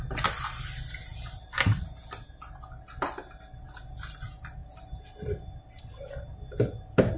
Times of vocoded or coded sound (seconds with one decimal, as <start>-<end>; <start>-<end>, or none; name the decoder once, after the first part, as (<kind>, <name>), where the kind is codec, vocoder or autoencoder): none